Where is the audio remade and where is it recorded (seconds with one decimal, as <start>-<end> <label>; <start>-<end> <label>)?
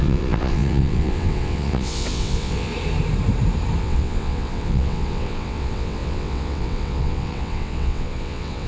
0.0-2.7 remade; 2.7-3.8 recorded; 3.8-8.7 remade